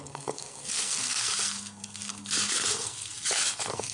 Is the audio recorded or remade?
remade